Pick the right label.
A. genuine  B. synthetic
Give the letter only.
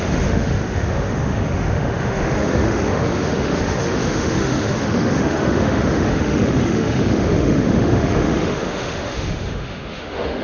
B